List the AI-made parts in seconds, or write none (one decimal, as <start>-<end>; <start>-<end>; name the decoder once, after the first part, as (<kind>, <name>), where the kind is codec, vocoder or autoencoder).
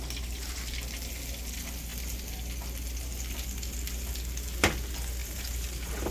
5.2-6.1 (vocoder, BigVGAN v2)